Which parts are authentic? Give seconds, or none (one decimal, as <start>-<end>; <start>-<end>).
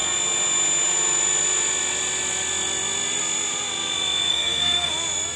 0.0-4.3; 4.9-5.4